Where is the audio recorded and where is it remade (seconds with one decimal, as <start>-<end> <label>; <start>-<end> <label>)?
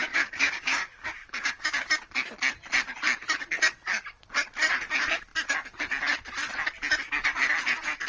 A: 0.0-1.9 remade; 1.9-8.1 recorded